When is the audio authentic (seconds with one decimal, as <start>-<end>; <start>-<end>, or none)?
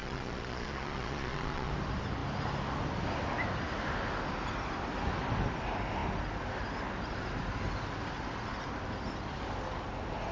1.7-10.3